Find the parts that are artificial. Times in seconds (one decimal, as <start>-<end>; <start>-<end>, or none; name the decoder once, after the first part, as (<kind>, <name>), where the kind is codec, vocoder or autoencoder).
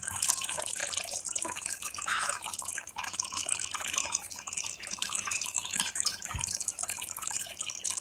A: 0.0-0.8 (autoencoder, DAC-VAE); 1.4-8.0